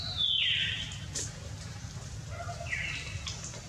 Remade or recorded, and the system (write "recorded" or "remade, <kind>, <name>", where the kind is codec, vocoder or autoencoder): recorded